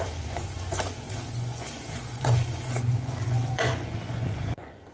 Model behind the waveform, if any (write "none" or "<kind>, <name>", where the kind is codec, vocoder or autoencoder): vocoder, Vocos